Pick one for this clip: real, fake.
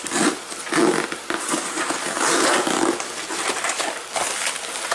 real